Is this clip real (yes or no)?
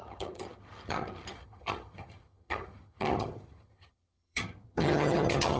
no